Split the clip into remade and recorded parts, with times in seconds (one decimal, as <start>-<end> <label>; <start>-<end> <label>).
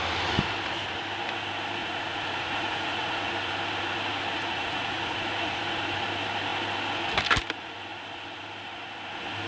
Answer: 0.0-1.8 recorded; 1.8-3.3 remade; 3.3-4.5 recorded; 4.5-5.6 remade; 5.6-9.5 recorded